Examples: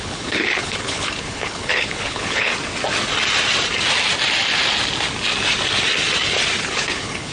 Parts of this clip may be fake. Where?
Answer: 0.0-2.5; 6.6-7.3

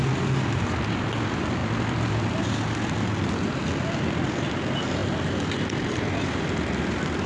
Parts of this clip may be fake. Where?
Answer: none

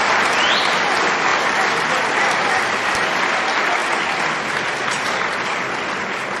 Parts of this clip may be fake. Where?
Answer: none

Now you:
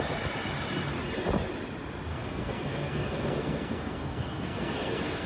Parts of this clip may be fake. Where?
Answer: 2.1-5.3